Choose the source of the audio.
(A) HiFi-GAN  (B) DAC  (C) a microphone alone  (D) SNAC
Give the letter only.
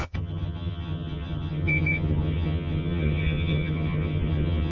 A